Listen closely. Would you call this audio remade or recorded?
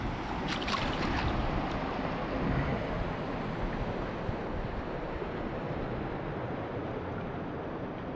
recorded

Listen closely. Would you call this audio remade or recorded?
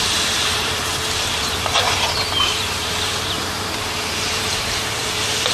remade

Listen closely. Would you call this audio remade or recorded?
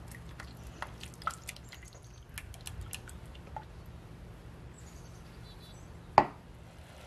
recorded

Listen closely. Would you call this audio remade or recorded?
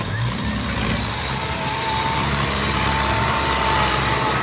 remade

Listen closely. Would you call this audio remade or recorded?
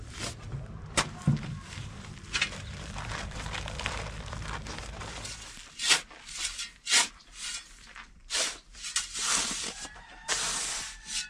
remade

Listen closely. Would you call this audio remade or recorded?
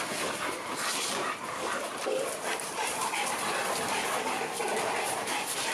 remade